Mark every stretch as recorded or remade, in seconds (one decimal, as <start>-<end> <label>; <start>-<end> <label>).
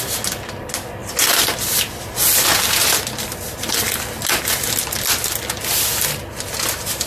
0.0-1.0 recorded; 1.0-1.8 remade; 1.8-7.1 recorded